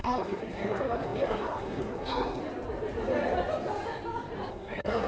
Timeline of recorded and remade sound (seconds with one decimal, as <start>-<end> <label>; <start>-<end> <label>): 0.0-2.4 remade; 2.4-4.5 recorded; 4.5-5.1 remade